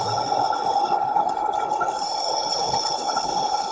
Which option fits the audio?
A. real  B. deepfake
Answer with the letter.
B